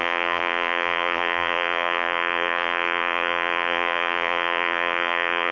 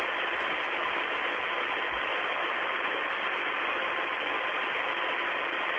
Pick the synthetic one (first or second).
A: first